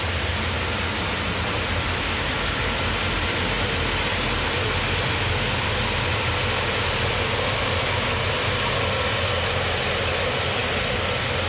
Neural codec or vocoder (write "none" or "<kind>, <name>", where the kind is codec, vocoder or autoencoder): none